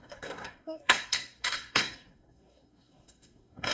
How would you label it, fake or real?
fake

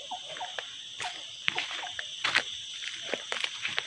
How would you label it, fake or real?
fake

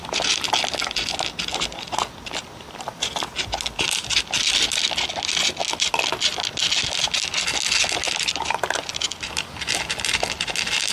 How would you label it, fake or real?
real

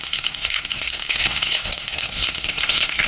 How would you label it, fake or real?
fake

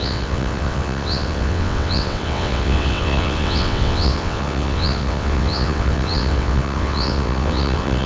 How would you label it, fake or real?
fake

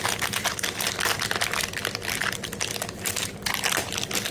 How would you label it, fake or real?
real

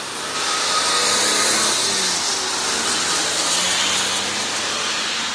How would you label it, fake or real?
real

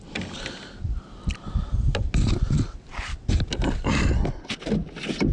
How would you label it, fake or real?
real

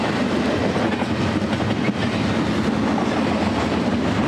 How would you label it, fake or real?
real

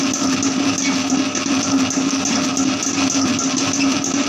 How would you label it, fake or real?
real